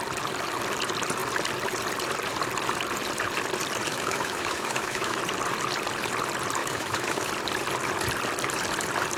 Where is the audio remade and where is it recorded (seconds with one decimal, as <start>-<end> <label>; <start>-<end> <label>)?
0.0-3.9 recorded; 3.9-5.2 remade; 5.2-6.6 recorded; 6.6-7.3 remade; 7.3-9.2 recorded